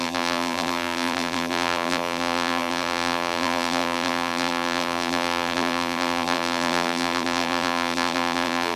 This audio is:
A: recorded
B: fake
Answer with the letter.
B